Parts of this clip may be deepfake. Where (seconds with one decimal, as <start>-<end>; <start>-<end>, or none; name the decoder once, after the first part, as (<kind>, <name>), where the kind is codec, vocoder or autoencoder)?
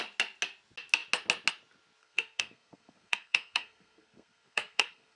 2.0-5.2 (codec, SNAC)